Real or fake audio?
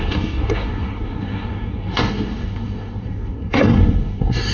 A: fake